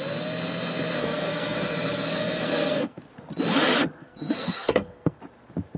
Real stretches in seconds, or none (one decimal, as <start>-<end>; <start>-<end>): 0.0-1.0; 3.0-4.0; 5.2-5.8